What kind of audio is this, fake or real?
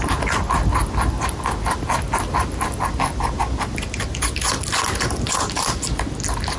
real